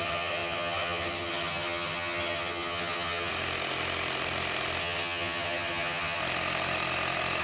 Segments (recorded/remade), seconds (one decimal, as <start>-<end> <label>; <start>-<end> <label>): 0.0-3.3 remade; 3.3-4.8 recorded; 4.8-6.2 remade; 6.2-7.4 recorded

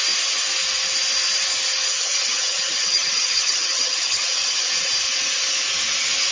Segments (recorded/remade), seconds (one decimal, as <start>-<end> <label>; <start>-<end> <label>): 0.0-1.9 recorded; 1.9-4.9 remade; 4.9-6.3 recorded

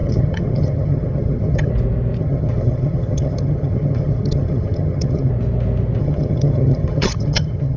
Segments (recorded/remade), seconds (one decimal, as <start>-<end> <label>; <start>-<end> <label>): 0.0-1.7 remade; 1.7-2.2 recorded; 2.2-5.3 remade; 5.3-6.0 recorded; 6.0-7.8 remade